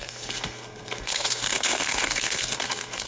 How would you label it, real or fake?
fake